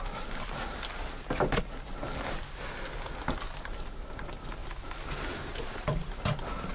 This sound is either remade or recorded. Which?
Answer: recorded